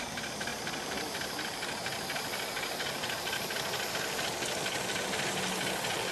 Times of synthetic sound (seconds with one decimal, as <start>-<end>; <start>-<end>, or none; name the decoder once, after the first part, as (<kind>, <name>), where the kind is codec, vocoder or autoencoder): none